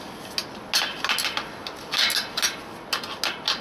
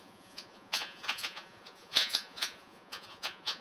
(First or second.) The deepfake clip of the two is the second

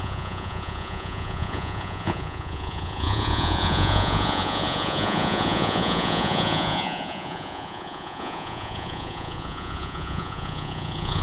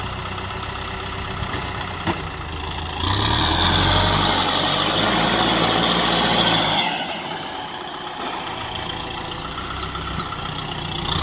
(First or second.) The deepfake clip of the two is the first